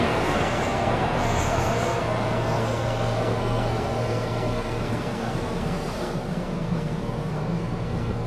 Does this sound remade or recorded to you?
remade